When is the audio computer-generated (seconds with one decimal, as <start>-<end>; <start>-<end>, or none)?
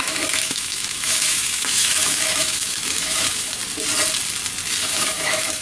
0.0-3.6; 4.8-5.6